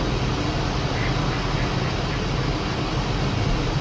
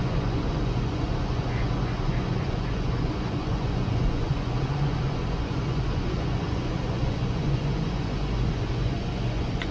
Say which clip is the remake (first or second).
second